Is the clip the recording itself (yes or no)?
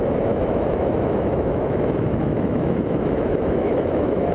no